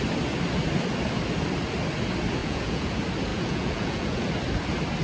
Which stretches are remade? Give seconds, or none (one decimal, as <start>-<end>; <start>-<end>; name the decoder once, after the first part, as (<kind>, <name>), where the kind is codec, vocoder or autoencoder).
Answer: 2.4-2.9 (vocoder, Vocos); 3.3-4.3

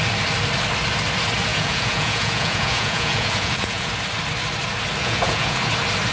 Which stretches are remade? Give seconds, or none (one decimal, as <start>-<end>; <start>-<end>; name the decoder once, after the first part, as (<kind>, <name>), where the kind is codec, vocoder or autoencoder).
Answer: 1.5-3.9 (vocoder, Vocos); 5.0-5.6

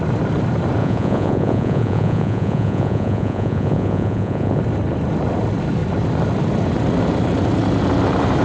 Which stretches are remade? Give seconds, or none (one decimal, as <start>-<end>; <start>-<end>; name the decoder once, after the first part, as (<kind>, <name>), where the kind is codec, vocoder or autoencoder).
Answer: 0.8-4.6 (vocoder, Vocos)

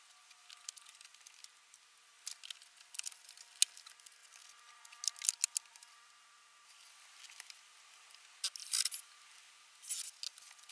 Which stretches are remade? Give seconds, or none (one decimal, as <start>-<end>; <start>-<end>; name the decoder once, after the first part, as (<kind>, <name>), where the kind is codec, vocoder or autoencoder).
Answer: none

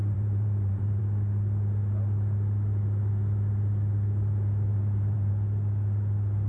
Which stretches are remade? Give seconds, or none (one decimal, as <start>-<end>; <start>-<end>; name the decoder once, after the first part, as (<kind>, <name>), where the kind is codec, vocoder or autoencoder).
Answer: 0.0-1.0 (vocoder, BigVGAN v2); 4.7-5.3

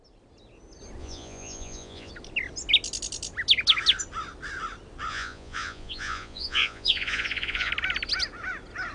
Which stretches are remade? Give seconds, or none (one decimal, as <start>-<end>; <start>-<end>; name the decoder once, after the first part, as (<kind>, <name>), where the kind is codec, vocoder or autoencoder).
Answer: 1.0-2.1 (vocoder, Vocos); 5.1-7.7

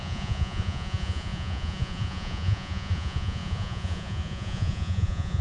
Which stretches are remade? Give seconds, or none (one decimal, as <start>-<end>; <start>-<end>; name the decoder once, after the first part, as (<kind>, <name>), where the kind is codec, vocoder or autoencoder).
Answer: 0.0-5.4 (vocoder, Vocos)